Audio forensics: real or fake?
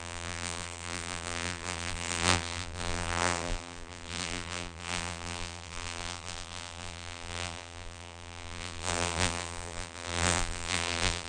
fake